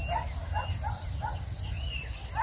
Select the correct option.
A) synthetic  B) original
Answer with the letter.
B